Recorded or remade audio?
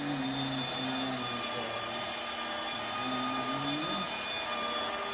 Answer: recorded